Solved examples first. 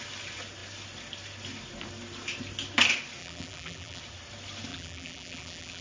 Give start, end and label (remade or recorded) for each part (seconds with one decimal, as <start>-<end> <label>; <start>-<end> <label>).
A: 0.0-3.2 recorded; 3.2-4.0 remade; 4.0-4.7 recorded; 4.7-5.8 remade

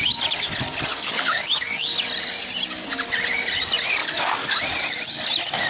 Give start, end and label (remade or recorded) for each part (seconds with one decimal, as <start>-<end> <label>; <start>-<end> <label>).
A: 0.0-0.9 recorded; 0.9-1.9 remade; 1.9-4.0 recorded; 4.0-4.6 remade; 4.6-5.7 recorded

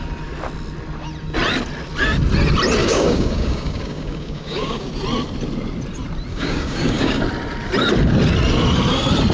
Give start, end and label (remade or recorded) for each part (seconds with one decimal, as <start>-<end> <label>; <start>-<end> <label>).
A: 0.0-2.8 recorded; 2.8-4.9 remade; 4.9-6.3 recorded; 6.3-7.2 remade; 7.2-9.3 recorded